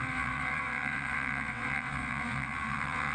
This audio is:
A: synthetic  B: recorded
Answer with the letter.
A